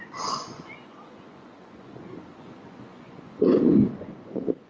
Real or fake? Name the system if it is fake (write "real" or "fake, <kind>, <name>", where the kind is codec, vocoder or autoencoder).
fake, vocoder, Vocos